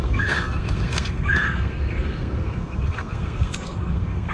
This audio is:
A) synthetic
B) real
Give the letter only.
A